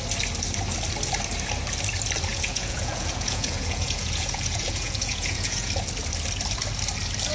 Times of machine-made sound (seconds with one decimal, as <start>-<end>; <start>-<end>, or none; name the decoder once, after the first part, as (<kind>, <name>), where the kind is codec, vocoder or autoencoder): 2.3-5.7 (vocoder, Vocos)